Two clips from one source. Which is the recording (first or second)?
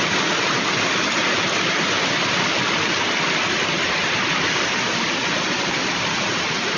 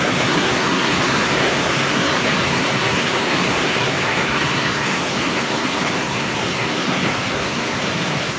first